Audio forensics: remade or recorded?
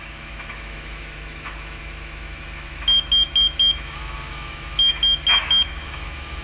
remade